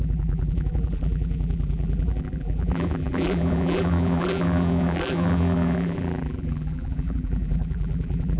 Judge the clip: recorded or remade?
remade